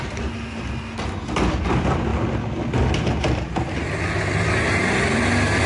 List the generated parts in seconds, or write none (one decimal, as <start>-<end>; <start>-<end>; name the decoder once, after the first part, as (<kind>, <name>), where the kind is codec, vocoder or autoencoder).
none